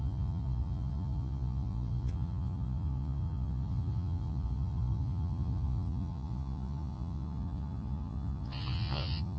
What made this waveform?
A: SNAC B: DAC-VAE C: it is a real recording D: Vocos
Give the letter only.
D